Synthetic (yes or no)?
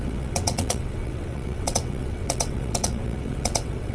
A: yes